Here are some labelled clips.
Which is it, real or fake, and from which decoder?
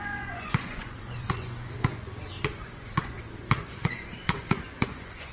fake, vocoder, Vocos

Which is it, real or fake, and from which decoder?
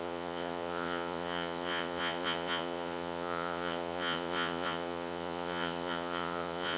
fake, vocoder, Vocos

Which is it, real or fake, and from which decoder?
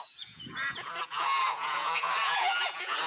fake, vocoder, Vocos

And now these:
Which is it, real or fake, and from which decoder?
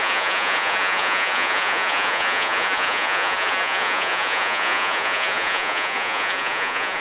fake, vocoder, Vocos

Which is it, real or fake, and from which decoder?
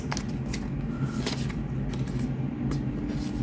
real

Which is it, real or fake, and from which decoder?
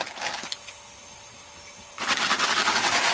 real